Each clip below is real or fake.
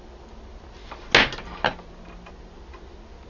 real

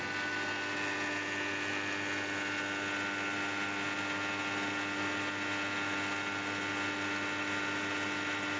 real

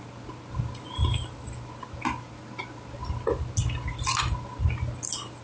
real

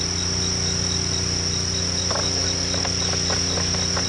real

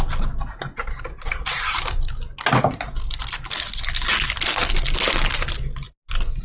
real